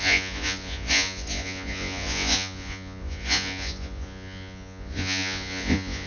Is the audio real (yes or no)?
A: no